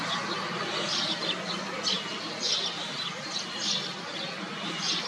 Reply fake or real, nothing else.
real